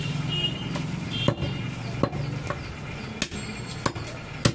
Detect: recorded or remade recorded